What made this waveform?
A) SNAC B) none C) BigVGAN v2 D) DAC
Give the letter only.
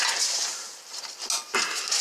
B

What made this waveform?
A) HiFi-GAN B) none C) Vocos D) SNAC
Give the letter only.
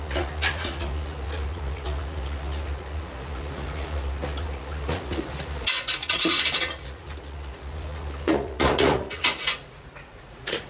C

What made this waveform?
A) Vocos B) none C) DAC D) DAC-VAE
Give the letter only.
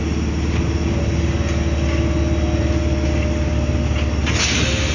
B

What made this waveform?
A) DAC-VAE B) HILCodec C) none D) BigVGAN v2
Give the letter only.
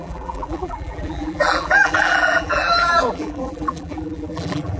D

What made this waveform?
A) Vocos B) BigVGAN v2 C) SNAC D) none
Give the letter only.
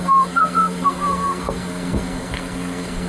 C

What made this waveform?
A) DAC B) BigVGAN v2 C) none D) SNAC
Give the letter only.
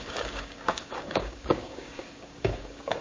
A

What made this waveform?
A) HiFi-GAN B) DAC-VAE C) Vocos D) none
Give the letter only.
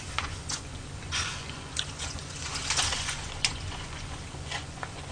C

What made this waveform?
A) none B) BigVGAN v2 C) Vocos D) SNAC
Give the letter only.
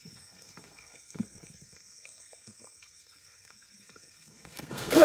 D